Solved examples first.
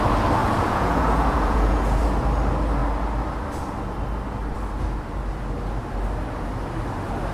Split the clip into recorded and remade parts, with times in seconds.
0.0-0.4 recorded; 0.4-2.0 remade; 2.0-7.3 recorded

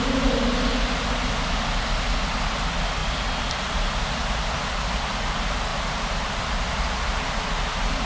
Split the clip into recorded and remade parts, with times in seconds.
0.0-8.1 recorded

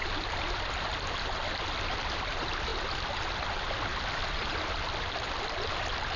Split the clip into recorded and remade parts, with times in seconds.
0.0-6.2 recorded

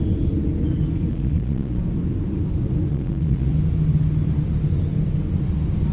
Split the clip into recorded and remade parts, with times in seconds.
0.0-1.1 recorded; 1.1-1.8 remade; 1.8-2.9 recorded; 2.9-3.5 remade; 3.5-5.9 recorded